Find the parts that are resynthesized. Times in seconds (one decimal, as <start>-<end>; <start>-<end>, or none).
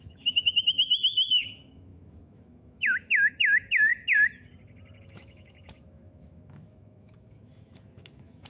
0.0-3.9; 5.0-8.5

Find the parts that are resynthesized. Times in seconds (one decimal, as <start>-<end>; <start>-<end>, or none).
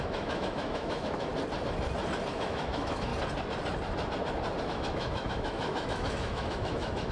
0.0-1.3; 2.3-3.1; 4.6-7.1